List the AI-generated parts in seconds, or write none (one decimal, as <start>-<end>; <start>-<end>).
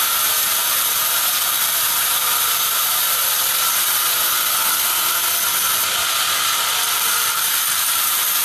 0.0-3.2; 6.9-8.4